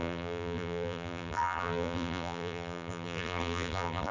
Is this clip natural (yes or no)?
no